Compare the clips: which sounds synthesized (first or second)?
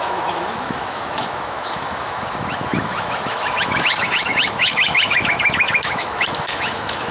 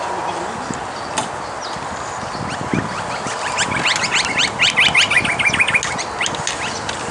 first